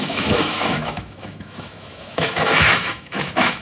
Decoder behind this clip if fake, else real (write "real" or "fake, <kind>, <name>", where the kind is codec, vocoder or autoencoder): fake, autoencoder, DAC-VAE